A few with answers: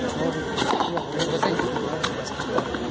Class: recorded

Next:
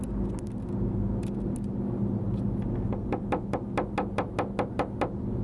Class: recorded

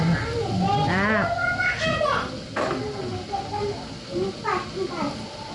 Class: recorded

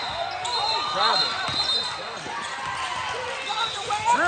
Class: recorded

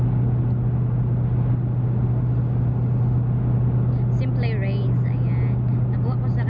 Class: recorded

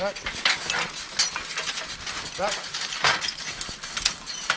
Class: recorded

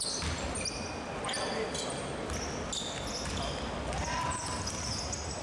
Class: recorded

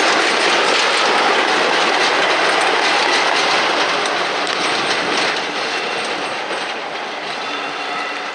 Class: recorded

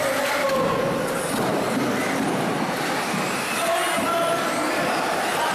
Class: recorded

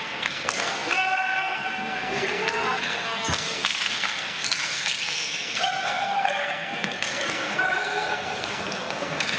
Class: remade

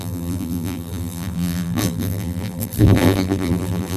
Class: remade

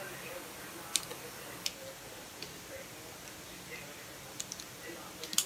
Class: recorded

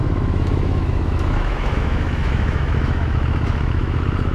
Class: remade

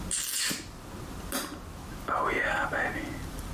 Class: recorded